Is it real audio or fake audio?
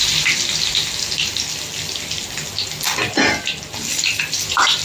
real